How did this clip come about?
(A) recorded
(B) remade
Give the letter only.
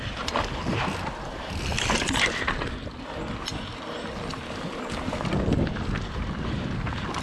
A